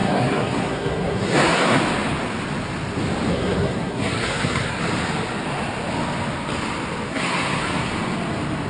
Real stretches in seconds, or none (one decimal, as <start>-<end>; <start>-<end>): 1.8-3.3; 4.8-7.1; 7.9-8.7